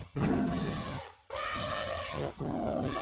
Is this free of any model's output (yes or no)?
no